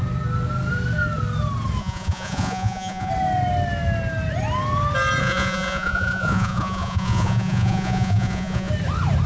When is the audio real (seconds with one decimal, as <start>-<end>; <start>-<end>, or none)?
0.0-1.8; 3.1-5.2; 8.7-9.3